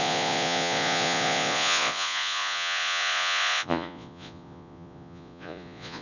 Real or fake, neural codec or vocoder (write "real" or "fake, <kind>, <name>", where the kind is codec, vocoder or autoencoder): fake, vocoder, Vocos